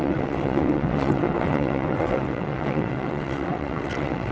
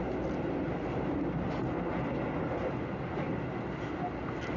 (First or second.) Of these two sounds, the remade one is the first